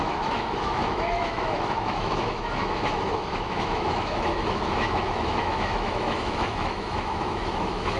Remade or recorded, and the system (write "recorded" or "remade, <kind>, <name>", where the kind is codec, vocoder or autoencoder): remade, autoencoder, DAC-VAE